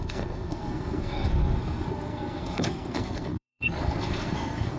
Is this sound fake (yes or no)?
yes